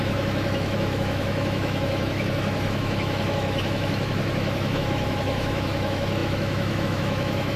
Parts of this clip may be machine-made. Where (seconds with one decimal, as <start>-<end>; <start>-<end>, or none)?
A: 0.0-7.6